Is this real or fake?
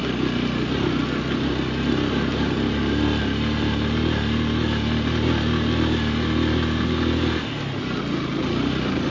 real